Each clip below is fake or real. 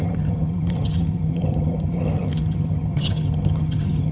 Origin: fake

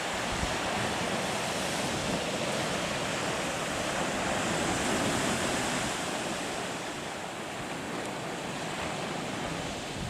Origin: real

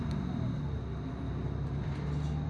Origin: real